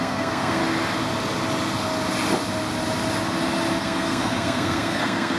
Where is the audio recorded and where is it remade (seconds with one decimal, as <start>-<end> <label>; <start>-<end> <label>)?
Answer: 0.0-0.6 remade; 0.6-3.8 recorded; 3.8-5.4 remade

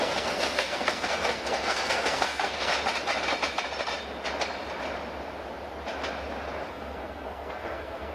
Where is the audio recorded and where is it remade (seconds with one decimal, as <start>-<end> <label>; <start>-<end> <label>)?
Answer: 0.0-2.7 remade; 2.7-6.7 recorded; 6.7-8.1 remade

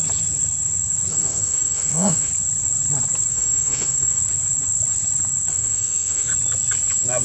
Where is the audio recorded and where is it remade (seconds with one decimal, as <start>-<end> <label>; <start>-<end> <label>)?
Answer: 0.0-1.1 recorded; 1.1-2.3 remade; 2.3-3.3 recorded; 3.3-4.2 remade; 4.2-5.5 recorded; 5.5-6.3 remade; 6.3-7.2 recorded

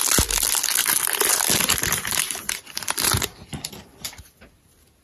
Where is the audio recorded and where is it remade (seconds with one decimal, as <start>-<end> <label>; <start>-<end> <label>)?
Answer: 0.0-0.8 recorded; 0.8-3.8 remade; 3.8-5.0 recorded

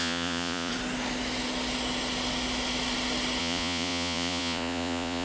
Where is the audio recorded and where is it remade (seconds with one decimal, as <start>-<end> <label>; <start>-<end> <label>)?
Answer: 0.0-0.7 remade; 0.7-3.4 recorded; 3.4-5.2 remade